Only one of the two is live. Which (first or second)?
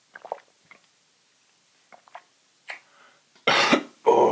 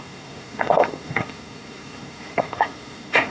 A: first